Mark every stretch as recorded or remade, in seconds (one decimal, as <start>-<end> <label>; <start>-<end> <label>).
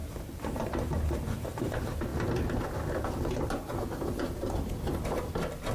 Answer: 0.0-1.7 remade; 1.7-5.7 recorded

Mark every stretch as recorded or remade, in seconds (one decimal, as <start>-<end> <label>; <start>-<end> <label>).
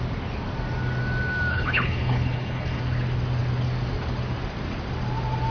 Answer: 0.0-1.5 recorded; 1.5-2.8 remade; 2.8-5.5 recorded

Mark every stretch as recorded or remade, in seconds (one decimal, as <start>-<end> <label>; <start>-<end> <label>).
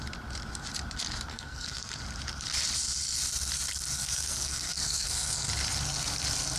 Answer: 0.0-1.3 recorded; 1.3-2.0 remade; 2.0-4.0 recorded; 4.0-5.5 remade; 5.5-6.6 recorded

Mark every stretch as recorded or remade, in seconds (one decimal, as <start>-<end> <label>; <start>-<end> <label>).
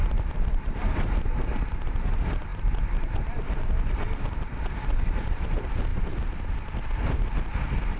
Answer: 0.0-0.8 recorded; 0.8-8.0 remade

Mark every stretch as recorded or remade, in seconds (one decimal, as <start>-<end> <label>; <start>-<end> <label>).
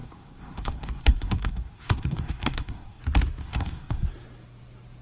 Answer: 0.0-3.0 remade; 3.0-3.4 recorded; 3.4-4.1 remade; 4.1-5.0 recorded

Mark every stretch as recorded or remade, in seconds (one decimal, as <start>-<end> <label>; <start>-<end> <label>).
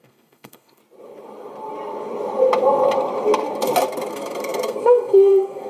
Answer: 0.0-0.8 remade; 0.8-4.1 recorded; 4.1-5.7 remade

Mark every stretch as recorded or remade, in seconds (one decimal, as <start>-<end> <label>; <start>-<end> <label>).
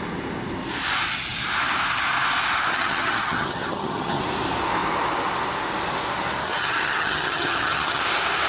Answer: 0.0-2.7 recorded; 2.7-4.2 remade; 4.2-6.4 recorded; 6.4-8.0 remade; 8.0-8.5 recorded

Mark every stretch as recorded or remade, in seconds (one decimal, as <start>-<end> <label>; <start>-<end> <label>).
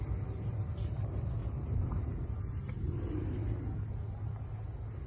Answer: 0.0-5.1 recorded